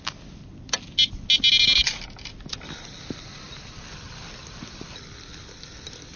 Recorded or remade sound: recorded